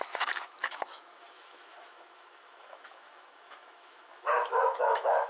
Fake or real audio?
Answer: fake